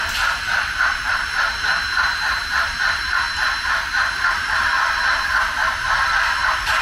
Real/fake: fake